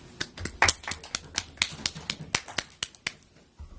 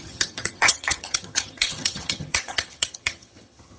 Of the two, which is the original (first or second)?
first